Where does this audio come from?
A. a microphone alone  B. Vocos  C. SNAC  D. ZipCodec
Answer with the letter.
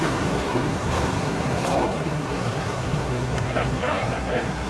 C